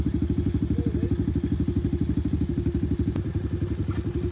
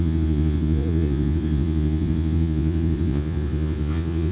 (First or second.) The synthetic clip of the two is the second